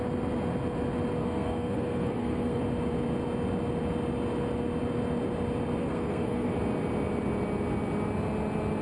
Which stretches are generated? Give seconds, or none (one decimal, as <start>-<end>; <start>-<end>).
1.2-2.6; 5.8-6.5